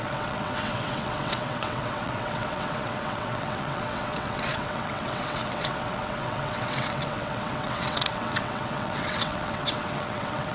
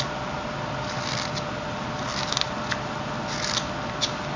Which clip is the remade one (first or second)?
first